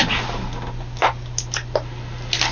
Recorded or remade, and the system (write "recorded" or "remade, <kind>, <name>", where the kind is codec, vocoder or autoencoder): recorded